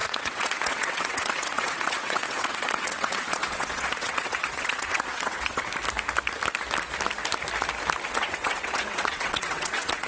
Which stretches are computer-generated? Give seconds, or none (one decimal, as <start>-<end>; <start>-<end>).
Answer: 0.0-5.6; 8.1-10.1